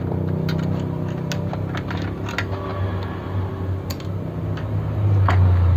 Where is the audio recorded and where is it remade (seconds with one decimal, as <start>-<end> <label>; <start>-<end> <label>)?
0.0-5.8 recorded